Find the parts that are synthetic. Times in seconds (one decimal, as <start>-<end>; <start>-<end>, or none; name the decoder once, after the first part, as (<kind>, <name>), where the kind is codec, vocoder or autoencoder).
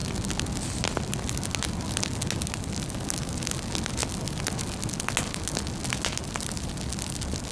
none